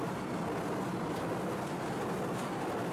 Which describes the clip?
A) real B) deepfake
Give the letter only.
A